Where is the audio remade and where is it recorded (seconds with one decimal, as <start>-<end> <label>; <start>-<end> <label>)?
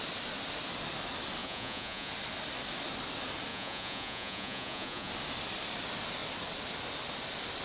0.0-1.4 recorded; 1.4-2.1 remade; 2.1-3.5 recorded; 3.5-5.1 remade; 5.1-7.6 recorded